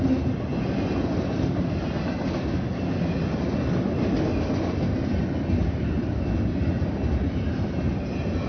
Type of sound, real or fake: real